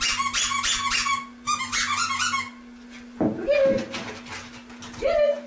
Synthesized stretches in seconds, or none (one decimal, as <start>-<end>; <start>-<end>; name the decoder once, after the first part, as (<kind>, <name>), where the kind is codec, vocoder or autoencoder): none

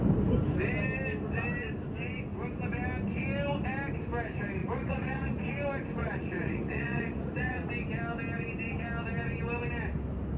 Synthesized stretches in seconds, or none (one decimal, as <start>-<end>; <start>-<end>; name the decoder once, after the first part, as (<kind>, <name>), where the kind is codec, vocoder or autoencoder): 4.6-5.5 (vocoder, Vocos); 6.0-7.7